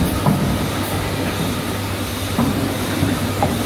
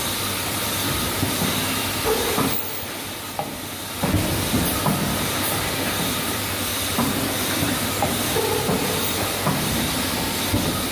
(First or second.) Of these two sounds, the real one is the first